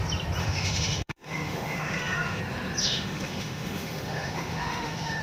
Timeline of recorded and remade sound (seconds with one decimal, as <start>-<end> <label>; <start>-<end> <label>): 0.0-0.4 recorded; 0.4-2.4 remade; 2.4-2.8 recorded; 2.8-5.2 remade